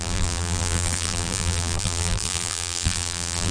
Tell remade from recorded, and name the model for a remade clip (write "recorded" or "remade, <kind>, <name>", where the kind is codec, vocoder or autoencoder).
remade, vocoder, BigVGAN v2